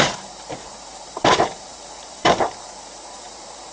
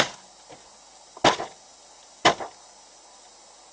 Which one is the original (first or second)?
second